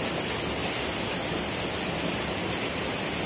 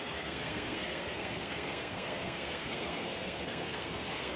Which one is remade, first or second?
second